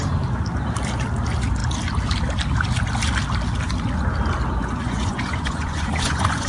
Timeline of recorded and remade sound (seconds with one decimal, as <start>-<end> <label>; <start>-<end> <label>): 0.0-4.6 recorded; 4.6-6.5 remade